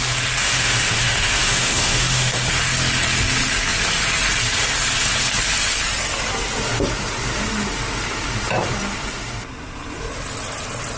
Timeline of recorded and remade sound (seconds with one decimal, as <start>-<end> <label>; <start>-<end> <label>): 0.0-0.4 recorded; 0.4-2.4 remade; 2.4-11.0 recorded